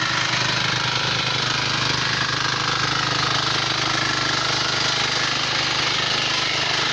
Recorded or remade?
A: recorded